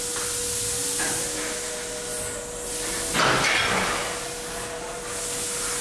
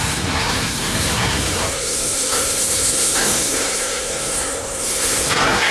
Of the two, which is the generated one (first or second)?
second